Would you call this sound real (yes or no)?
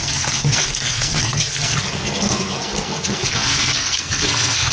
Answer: no